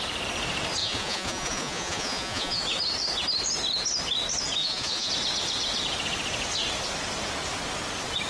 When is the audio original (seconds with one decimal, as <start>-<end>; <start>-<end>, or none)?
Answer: 0.0-0.8; 2.6-4.6; 5.1-8.3